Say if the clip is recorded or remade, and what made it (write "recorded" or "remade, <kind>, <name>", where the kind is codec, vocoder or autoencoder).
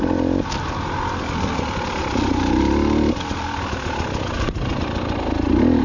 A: recorded